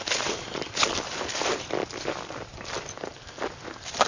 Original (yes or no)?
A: yes